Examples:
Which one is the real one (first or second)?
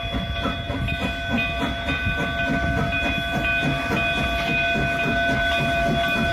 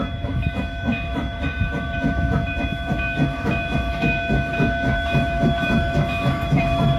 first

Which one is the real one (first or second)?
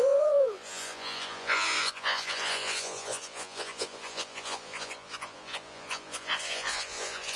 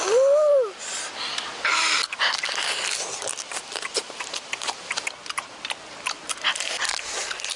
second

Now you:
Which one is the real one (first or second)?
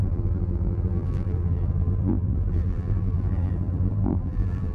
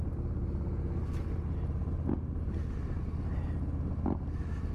second